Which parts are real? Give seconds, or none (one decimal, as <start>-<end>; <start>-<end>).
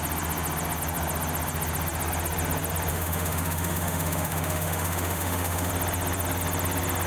0.0-2.9; 5.7-7.1